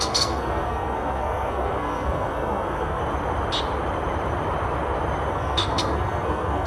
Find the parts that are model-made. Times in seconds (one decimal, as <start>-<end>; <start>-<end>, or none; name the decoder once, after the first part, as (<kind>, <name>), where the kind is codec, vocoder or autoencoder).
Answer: 0.0-3.0 (codec, SNAC); 5.3-6.7